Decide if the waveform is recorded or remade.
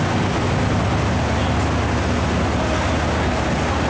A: recorded